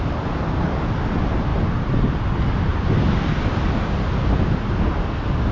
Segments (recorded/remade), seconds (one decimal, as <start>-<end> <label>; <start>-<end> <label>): 0.0-5.5 recorded